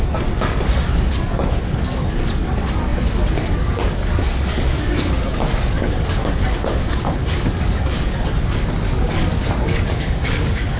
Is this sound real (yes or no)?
no